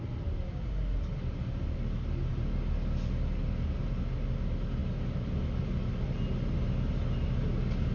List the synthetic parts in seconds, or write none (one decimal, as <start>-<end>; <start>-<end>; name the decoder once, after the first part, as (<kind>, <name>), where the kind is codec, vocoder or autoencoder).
none